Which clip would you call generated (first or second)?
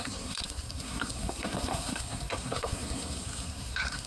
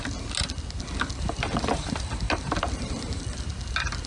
first